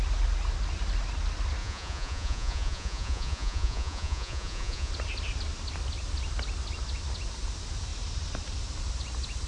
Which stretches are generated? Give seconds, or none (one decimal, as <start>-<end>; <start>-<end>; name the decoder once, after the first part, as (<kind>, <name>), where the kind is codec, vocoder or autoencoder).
1.6-4.9 (vocoder, Vocos)